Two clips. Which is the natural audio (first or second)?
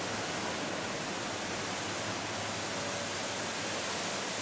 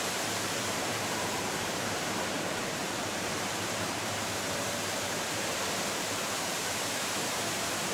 first